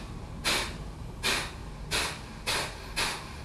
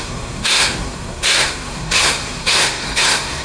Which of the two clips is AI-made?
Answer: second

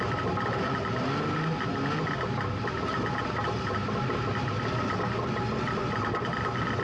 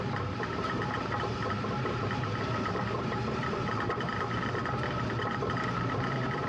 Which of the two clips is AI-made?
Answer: second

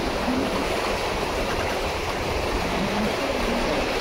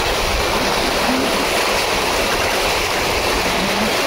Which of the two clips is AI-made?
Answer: first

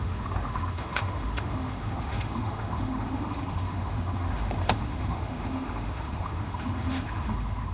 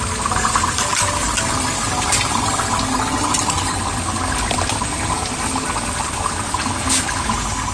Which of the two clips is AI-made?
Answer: first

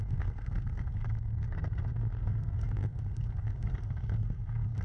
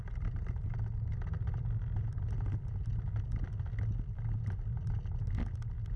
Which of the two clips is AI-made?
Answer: first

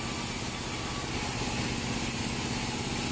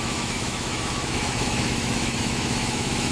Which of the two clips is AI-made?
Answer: second